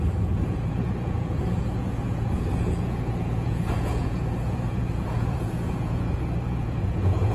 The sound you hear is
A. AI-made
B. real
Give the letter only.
A